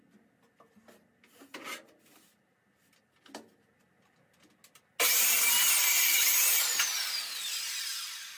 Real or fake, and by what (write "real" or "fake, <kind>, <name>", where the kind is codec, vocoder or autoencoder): real